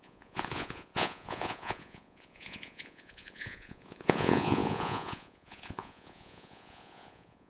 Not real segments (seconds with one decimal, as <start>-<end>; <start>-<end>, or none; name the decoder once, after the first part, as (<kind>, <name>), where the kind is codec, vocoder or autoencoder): 0.0-7.5 (vocoder, Vocos)